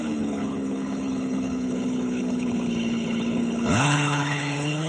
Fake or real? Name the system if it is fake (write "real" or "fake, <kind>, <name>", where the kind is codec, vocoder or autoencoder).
fake, codec, HILCodec